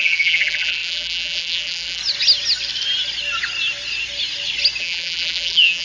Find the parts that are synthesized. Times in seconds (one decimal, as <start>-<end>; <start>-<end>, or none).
0.0-2.0; 4.8-5.8